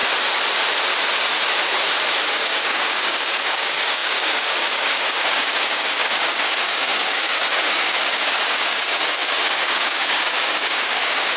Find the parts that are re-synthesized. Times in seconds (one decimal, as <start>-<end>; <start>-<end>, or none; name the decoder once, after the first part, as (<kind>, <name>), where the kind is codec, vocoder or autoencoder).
2.3-11.4 (codec, DAC)